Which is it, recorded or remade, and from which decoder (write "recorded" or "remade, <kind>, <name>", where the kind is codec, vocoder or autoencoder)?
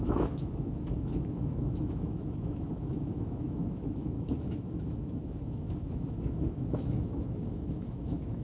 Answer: remade, autoencoder, DAC-VAE